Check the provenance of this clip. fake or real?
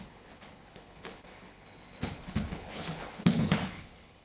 fake